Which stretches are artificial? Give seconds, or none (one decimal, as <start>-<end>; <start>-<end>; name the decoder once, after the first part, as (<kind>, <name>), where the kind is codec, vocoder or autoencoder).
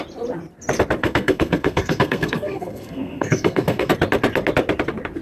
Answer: 1.0-3.9 (codec, SNAC)